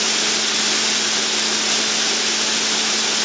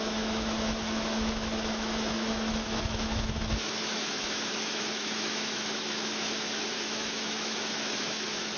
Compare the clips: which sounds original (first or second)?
first